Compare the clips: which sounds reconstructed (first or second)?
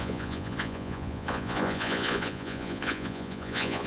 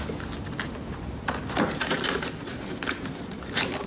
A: first